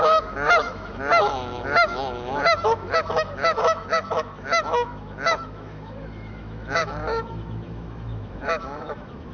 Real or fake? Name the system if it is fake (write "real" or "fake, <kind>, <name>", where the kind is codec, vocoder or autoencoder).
fake, autoencoder, DAC-VAE